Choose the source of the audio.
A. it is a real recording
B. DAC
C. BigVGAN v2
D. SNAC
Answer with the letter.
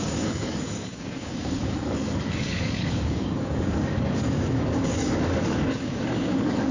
B